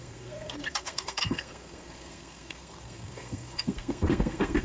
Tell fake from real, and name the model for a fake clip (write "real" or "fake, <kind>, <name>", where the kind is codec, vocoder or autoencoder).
fake, codec, SNAC